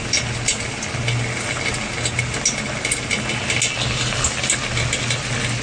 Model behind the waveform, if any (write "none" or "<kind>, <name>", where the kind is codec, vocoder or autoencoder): none